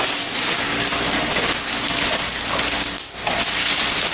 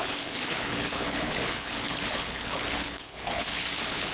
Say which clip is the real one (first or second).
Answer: first